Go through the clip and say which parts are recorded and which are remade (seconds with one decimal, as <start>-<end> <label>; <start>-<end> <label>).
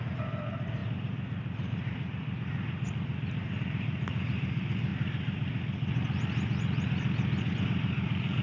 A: 0.0-4.9 remade; 4.9-7.6 recorded; 7.6-8.4 remade